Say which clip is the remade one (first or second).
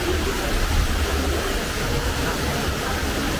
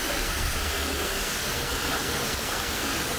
second